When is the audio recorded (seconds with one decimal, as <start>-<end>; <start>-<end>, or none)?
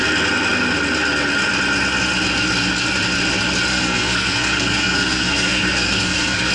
0.0-3.7